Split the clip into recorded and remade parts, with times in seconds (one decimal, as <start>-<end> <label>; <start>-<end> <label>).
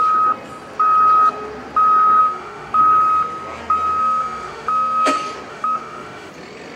0.0-2.2 recorded; 2.2-2.8 remade; 2.8-4.0 recorded; 4.0-5.1 remade; 5.1-5.5 recorded; 5.5-6.3 remade; 6.3-6.8 recorded